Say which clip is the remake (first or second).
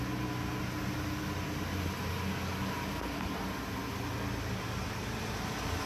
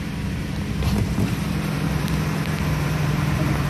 second